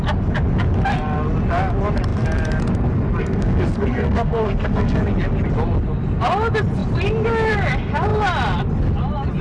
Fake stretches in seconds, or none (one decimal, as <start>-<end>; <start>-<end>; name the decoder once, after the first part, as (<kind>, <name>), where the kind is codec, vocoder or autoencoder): 3.2-5.0 (codec, SNAC)